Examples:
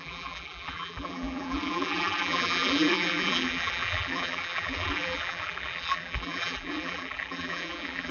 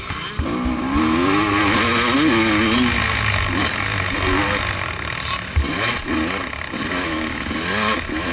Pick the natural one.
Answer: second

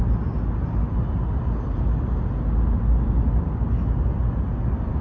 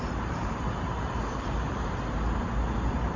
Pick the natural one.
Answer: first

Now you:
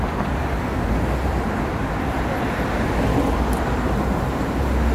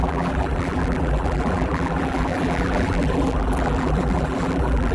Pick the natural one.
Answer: first